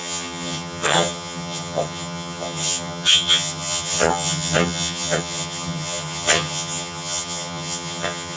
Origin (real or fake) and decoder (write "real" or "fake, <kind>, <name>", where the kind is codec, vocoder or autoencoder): fake, vocoder, HiFi-GAN